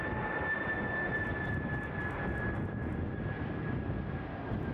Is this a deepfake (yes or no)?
no